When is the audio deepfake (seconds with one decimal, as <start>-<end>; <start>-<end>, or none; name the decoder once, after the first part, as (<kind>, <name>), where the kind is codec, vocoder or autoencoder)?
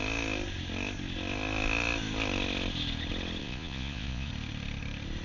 3.4-4.3 (vocoder, Vocos)